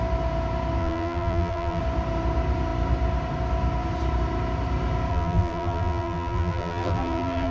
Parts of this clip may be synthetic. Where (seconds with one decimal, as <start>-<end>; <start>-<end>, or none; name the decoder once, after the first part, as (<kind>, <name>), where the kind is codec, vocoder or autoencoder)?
0.8-1.8 (vocoder, BigVGAN v2); 5.1-7.5